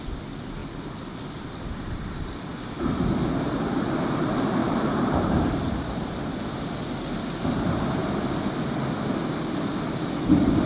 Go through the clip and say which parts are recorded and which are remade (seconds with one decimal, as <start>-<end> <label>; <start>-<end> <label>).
0.0-4.6 recorded; 4.6-6.4 remade; 6.4-10.7 recorded